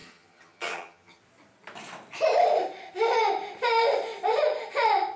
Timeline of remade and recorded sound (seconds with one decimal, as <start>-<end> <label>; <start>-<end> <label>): 0.0-1.2 remade; 1.2-5.2 recorded